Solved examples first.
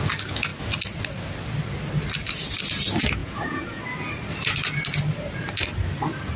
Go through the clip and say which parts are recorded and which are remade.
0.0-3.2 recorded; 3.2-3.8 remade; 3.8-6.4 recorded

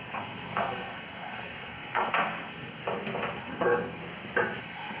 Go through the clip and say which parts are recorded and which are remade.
0.0-2.8 remade; 2.8-3.4 recorded; 3.4-4.0 remade; 4.0-4.6 recorded; 4.6-5.0 remade